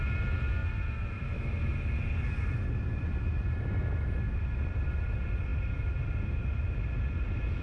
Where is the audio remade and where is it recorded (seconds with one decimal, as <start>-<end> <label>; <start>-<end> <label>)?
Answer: 0.0-7.6 recorded